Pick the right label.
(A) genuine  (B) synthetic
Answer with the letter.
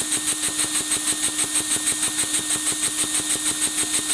A